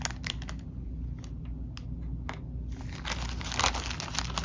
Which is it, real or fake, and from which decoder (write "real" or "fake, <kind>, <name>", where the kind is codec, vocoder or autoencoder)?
real